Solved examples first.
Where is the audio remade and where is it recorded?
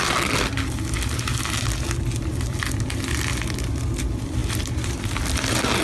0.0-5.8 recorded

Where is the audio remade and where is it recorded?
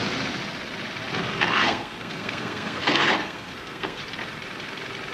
0.0-1.2 recorded; 1.2-4.0 remade; 4.0-5.1 recorded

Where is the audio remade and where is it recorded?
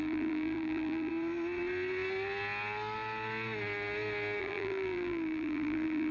0.0-1.1 remade; 1.1-4.4 recorded; 4.4-6.1 remade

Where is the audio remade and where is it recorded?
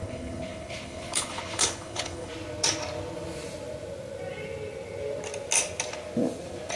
0.0-2.3 remade; 2.3-6.8 recorded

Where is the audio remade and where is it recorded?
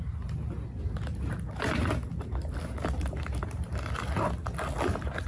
0.0-5.3 recorded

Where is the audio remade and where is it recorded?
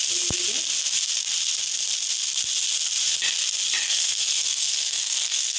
0.0-3.8 recorded; 3.8-5.6 remade